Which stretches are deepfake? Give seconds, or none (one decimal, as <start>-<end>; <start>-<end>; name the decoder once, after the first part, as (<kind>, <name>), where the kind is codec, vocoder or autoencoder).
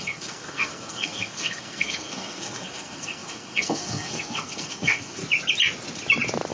0.0-5.2 (codec, SNAC)